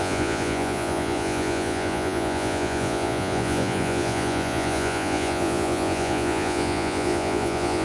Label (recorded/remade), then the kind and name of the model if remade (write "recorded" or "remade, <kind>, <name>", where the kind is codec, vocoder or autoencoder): remade, vocoder, Vocos